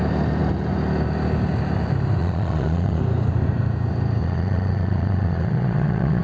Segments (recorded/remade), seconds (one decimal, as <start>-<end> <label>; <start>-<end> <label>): 0.0-2.2 recorded; 2.2-3.0 remade; 3.0-4.2 recorded; 4.2-6.2 remade